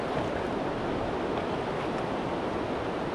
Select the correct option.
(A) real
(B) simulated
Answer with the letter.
B